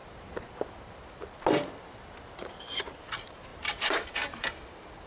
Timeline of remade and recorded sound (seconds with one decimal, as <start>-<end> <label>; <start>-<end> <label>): 0.0-2.8 recorded; 2.8-5.1 remade